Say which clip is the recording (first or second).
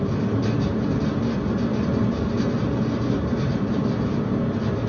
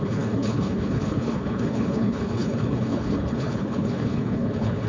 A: first